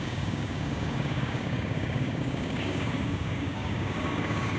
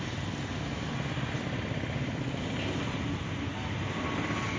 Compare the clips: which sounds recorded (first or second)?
second